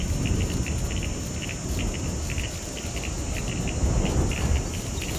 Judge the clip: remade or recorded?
recorded